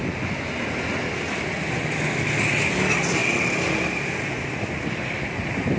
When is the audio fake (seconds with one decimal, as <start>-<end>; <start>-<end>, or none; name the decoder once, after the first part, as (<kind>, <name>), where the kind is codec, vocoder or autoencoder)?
none